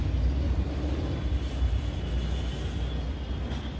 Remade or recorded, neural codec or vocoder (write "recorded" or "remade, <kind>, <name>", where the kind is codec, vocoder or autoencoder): recorded